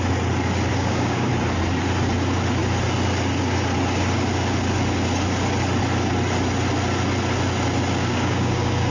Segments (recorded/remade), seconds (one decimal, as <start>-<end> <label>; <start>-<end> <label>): 0.0-0.7 recorded; 0.7-1.3 remade; 1.3-8.0 recorded; 8.0-8.9 remade